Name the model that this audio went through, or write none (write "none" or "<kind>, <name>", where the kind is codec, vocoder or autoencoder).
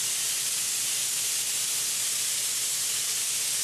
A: none